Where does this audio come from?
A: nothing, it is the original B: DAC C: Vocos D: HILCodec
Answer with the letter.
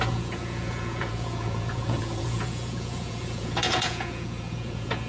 C